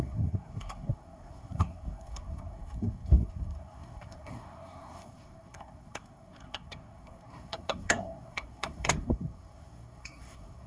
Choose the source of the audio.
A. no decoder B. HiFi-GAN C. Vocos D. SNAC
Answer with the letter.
D